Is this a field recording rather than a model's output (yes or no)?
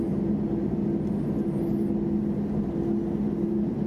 yes